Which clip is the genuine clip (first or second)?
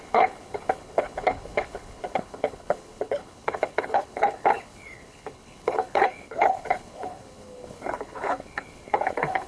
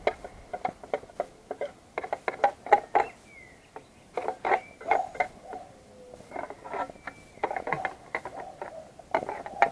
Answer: second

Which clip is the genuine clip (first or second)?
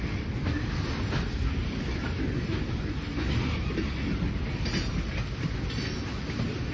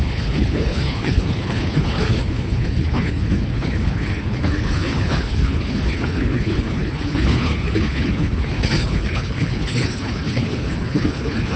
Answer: first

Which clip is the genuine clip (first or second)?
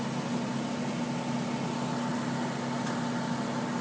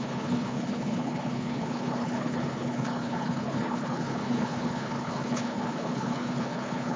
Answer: first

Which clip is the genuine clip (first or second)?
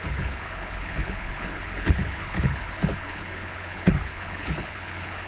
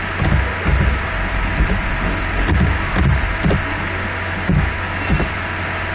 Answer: second